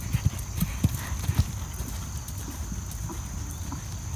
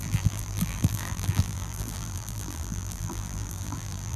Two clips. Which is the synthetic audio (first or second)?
second